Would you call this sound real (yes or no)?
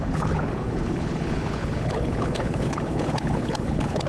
no